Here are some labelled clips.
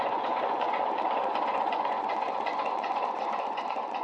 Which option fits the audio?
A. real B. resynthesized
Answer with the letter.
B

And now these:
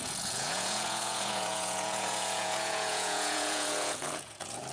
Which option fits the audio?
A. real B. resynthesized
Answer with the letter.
B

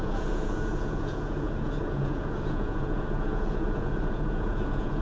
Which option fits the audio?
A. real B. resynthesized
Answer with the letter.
B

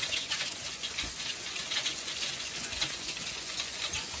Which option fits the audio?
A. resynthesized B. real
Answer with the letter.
A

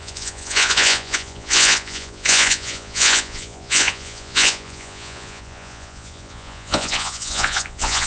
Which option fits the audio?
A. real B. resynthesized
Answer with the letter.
B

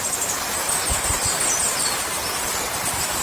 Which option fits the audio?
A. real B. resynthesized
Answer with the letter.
A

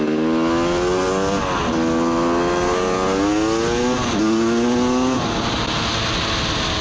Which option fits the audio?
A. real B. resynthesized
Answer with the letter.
A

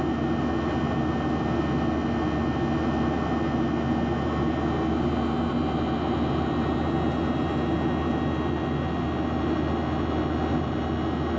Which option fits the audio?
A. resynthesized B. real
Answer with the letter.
B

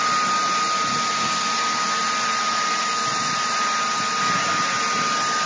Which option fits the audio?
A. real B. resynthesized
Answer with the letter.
A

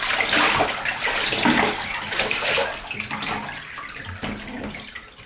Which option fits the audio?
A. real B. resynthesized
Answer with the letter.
A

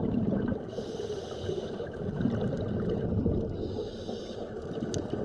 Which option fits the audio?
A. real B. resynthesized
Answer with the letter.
A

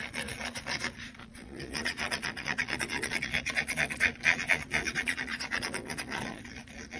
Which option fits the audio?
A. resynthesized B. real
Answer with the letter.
A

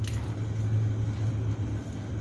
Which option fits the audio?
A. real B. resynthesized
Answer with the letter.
A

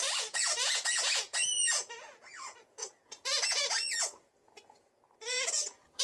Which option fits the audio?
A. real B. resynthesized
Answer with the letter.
B